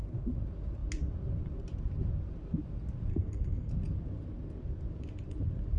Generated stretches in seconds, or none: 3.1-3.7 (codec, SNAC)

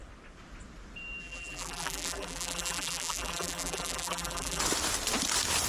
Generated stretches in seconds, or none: 1.2-4.6 (vocoder, BigVGAN v2)

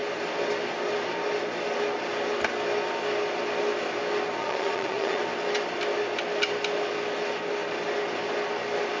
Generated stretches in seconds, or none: 4.4-5.2 (vocoder, Vocos)